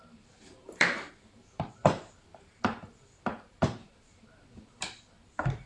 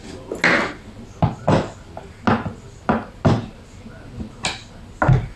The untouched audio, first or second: second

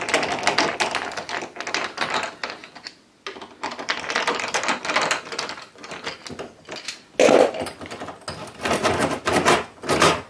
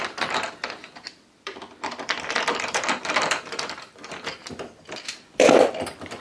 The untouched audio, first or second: first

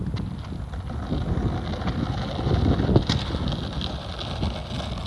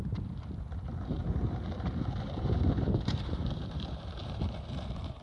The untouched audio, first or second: first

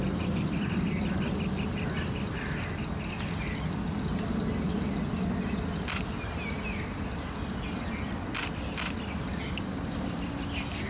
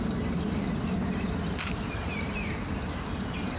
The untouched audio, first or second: first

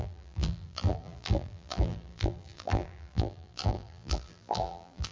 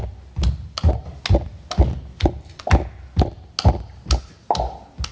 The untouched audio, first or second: second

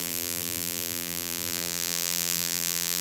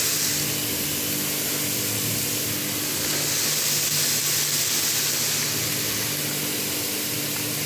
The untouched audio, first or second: second